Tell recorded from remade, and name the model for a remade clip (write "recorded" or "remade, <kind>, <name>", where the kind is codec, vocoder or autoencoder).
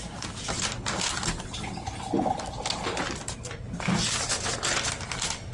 recorded